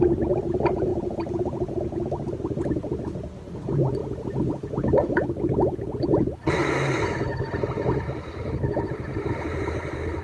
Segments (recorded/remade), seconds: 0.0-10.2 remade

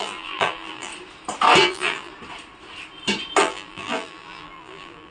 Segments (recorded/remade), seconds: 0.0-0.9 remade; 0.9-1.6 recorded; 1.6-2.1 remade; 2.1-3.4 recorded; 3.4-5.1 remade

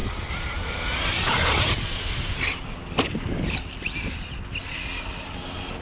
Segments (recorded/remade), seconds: 0.0-3.5 remade; 3.5-5.8 recorded

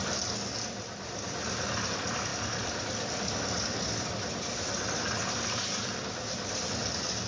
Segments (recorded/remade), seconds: 0.0-2.3 recorded; 2.3-6.7 remade; 6.7-7.3 recorded